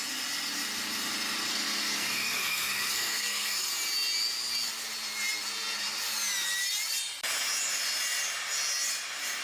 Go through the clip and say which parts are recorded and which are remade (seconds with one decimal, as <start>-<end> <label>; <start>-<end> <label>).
0.0-1.5 recorded; 1.5-3.7 remade; 3.7-9.4 recorded